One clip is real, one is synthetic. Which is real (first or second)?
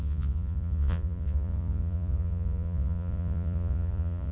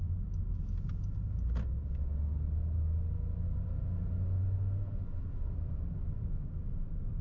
second